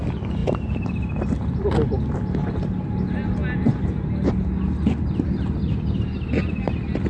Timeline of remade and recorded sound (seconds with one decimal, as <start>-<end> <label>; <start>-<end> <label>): 0.0-7.1 recorded